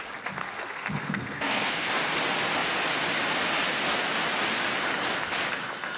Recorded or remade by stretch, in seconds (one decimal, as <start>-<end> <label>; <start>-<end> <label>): 0.0-0.4 recorded; 0.4-1.9 remade; 1.9-6.0 recorded